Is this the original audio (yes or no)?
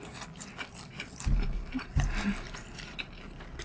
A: yes